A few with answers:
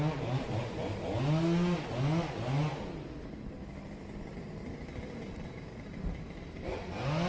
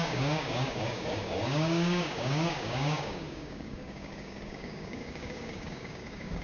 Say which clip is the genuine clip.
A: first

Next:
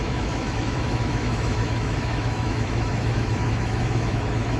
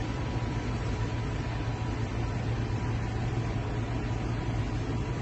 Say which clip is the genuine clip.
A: second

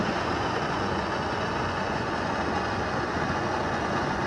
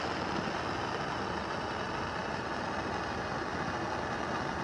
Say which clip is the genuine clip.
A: second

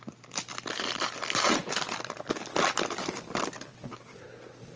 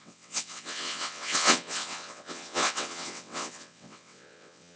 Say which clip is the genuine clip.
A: first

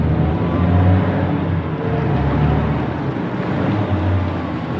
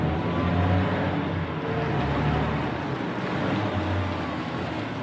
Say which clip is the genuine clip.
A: second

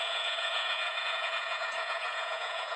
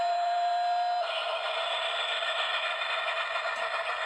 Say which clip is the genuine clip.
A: second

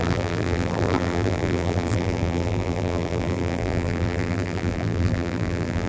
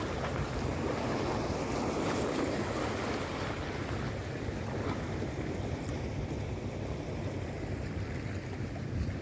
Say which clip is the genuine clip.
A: second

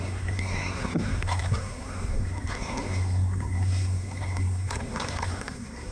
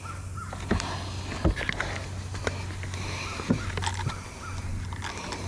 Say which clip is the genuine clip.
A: second